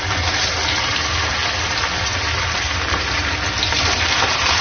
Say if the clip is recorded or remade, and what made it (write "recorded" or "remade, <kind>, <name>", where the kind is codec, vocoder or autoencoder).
recorded